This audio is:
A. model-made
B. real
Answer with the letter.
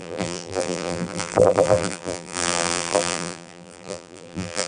A